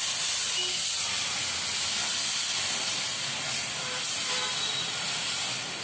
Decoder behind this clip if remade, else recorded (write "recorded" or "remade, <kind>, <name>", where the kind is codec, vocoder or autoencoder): recorded